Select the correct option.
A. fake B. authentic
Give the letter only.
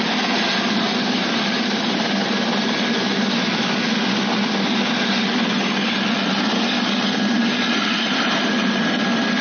B